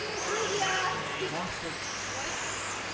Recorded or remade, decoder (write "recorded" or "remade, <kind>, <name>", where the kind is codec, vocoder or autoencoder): recorded